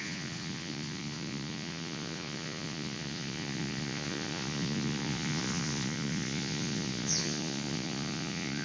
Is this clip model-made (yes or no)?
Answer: yes